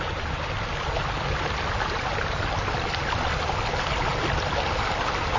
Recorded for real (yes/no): yes